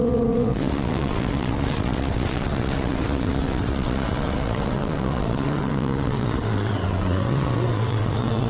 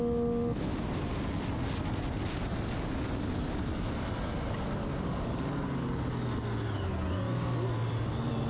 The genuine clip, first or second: second